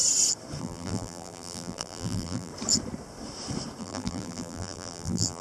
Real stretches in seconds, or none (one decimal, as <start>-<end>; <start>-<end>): 0.0-0.6; 2.5-3.8